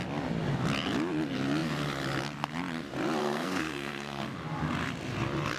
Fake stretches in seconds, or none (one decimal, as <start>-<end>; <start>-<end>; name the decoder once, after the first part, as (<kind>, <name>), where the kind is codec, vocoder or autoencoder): 3.2-4.2 (codec, SNAC)